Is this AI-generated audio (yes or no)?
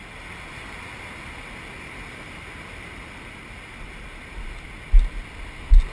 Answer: no